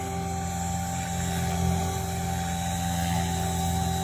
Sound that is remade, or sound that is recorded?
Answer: recorded